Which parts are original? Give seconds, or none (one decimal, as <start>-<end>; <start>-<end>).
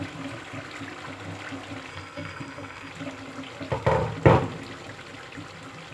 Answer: 0.0-1.9; 2.9-5.9